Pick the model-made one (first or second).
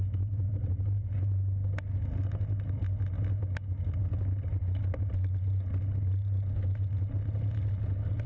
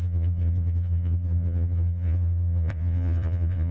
second